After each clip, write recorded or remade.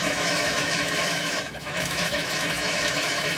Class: remade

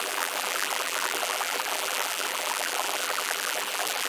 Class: remade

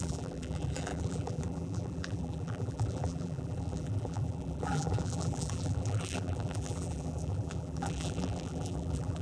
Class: remade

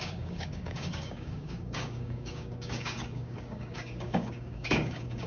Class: remade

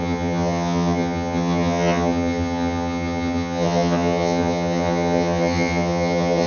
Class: remade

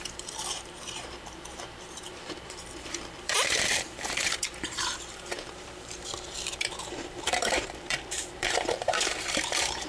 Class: remade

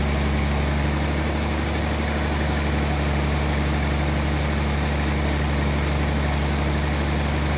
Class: recorded